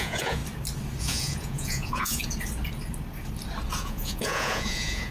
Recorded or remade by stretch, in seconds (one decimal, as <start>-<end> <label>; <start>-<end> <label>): 0.0-0.4 remade; 0.4-1.0 recorded; 1.0-2.2 remade; 2.2-3.8 recorded; 3.8-5.1 remade